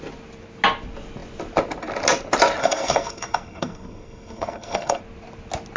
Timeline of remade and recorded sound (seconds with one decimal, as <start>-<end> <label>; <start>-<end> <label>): 0.0-2.6 recorded; 2.6-5.0 remade; 5.0-5.8 recorded